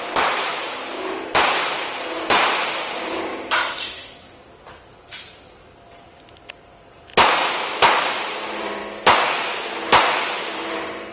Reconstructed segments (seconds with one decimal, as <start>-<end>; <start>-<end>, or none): 0.0-3.3; 6.5-7.1; 8.1-8.8; 10.2-11.1